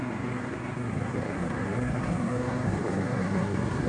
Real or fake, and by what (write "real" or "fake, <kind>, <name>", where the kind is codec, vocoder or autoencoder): fake, codec, SNAC